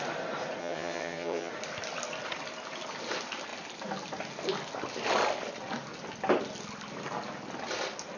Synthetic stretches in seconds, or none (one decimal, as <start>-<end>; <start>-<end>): 0.6-1.5